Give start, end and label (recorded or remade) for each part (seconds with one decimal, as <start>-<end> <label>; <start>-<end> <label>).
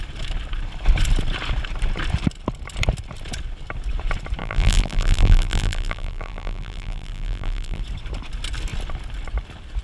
0.0-4.4 recorded; 4.4-7.8 remade; 7.8-9.8 recorded